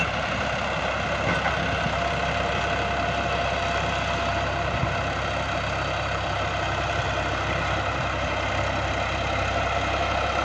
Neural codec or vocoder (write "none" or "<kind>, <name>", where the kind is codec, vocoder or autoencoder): none